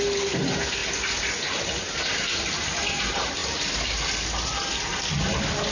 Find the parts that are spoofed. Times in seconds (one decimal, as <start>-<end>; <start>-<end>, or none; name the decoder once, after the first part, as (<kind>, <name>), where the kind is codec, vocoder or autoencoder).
none